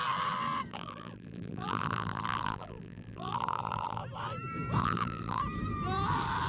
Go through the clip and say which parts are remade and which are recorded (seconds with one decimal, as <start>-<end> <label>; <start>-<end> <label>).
0.0-0.7 recorded; 0.7-4.0 remade; 4.0-4.8 recorded; 4.8-5.4 remade; 5.4-6.5 recorded

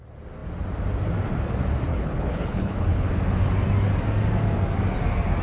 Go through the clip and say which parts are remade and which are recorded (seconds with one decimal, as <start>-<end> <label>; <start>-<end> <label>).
0.0-1.9 recorded; 1.9-3.1 remade; 3.1-5.4 recorded

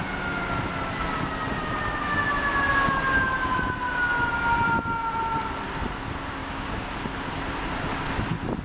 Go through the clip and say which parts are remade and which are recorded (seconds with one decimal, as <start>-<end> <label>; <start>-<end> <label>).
0.0-6.4 recorded; 6.4-6.9 remade; 6.9-8.6 recorded

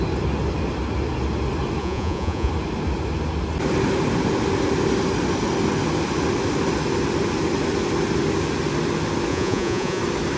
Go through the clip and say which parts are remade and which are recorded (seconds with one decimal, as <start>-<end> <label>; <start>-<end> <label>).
0.0-1.8 recorded; 1.8-2.5 remade; 2.5-9.3 recorded; 9.3-10.0 remade; 10.0-10.4 recorded